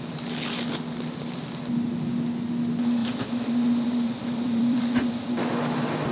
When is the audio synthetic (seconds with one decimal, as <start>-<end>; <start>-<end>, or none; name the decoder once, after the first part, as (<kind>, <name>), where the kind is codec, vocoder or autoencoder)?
3.0-5.4 (vocoder, BigVGAN v2)